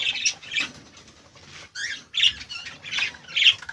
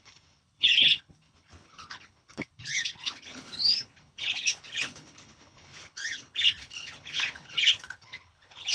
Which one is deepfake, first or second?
second